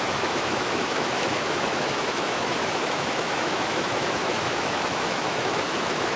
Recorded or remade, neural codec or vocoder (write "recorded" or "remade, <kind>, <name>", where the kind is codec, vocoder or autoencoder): remade, autoencoder, DAC-VAE